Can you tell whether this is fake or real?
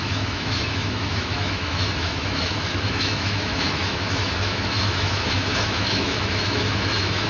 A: fake